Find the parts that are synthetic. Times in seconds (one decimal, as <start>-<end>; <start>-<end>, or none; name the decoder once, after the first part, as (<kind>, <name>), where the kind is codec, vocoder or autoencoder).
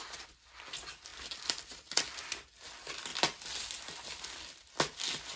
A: none